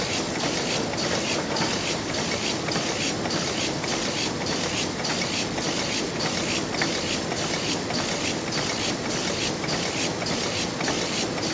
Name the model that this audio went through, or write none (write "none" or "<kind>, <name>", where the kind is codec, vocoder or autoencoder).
none